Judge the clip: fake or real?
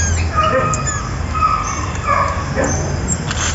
real